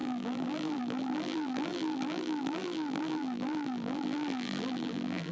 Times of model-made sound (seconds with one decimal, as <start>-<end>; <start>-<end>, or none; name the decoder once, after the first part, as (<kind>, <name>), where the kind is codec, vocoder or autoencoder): 0.0-5.3 (vocoder, BigVGAN v2)